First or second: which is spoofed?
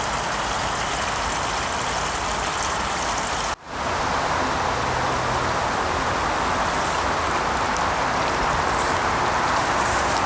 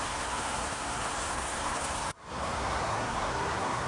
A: second